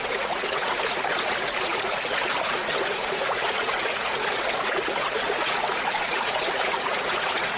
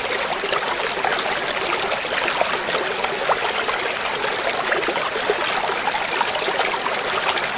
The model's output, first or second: first